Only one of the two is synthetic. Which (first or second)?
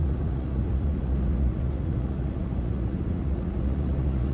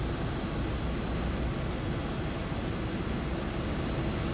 first